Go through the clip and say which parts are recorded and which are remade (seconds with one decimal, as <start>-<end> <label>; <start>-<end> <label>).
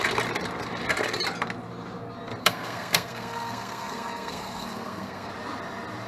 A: 0.0-2.4 recorded; 2.4-5.3 remade; 5.3-6.1 recorded